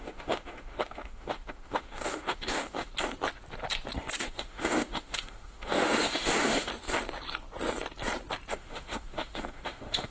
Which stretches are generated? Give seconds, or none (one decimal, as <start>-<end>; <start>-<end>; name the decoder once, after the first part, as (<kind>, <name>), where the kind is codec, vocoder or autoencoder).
0.0-2.9 (autoencoder, DAC-VAE); 4.2-6.7; 8.5-10.1